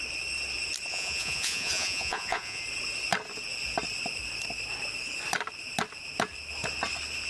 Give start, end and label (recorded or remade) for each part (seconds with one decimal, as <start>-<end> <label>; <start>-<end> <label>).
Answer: 0.0-0.9 recorded; 0.9-2.6 remade; 2.6-7.3 recorded